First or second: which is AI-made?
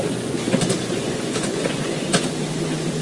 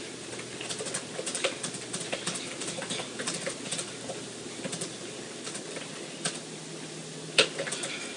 first